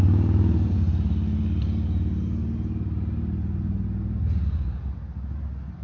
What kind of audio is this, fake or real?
real